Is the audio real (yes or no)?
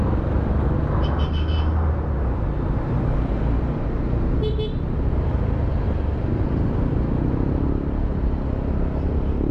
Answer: yes